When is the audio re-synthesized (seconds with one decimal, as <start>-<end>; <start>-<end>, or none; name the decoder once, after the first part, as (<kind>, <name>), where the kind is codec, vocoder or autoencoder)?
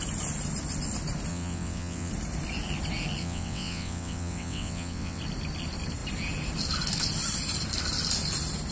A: 1.3-2.1 (vocoder, WaveNeXt); 3.2-5.2